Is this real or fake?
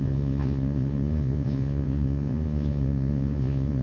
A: fake